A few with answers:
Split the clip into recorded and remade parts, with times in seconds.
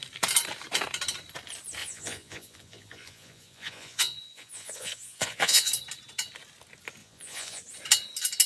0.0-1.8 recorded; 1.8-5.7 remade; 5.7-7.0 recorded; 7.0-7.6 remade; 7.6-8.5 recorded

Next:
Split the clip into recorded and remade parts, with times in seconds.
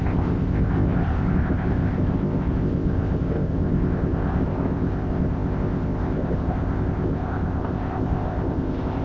0.0-9.0 remade